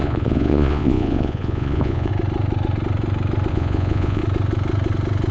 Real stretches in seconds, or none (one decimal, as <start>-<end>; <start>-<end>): 2.1-3.5; 4.2-5.3